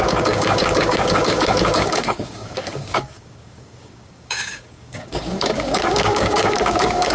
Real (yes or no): no